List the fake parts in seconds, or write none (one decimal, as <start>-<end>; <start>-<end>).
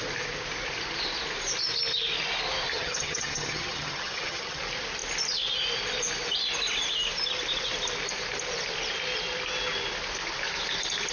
2.7-4.6